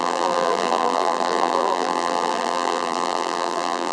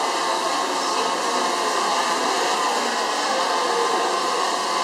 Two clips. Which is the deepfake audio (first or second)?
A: first